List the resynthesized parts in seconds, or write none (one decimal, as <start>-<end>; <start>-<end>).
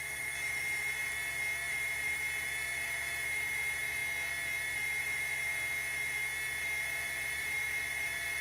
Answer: 0.0-1.0; 1.7-4.0; 5.0-5.5; 6.6-8.4